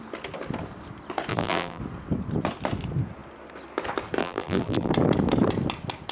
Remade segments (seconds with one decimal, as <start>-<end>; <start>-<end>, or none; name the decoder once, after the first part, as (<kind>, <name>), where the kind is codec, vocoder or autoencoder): 1.3-1.8 (vocoder, BigVGAN v2); 4.2-4.9